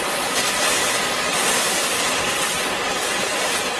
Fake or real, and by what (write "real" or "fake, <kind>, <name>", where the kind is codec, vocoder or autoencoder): real